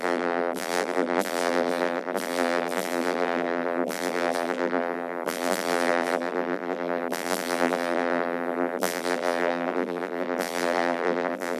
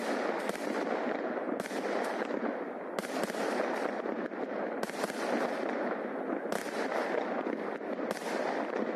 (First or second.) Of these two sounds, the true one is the second